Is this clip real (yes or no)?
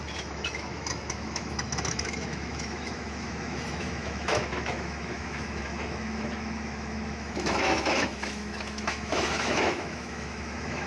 no